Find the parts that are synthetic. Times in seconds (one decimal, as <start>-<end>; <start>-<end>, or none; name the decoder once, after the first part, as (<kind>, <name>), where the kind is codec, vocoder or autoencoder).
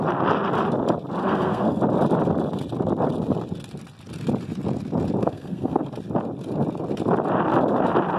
1.2-1.8 (codec, SNAC); 5.2-5.8